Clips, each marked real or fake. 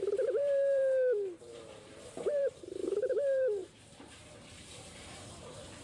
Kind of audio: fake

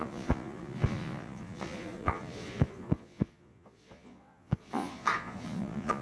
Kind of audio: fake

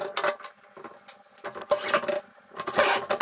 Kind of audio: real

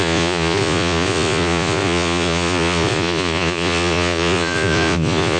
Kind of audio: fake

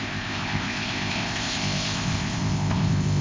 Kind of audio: fake